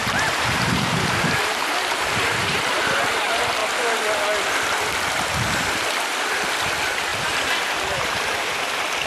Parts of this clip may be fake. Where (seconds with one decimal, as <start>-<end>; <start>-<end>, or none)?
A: 0.0-2.8; 7.1-8.6